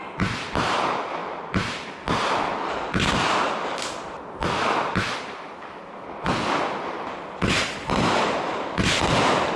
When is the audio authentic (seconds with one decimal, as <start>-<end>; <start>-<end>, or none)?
0.0-9.6